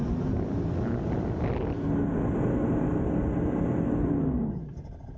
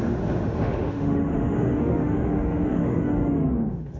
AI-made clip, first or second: second